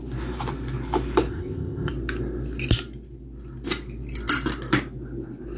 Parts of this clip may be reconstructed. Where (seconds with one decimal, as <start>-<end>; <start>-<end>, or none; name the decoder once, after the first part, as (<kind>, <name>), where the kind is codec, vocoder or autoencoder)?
1.3-1.9 (codec, ZipCodec)